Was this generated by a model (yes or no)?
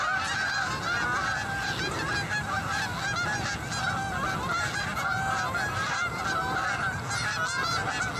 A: no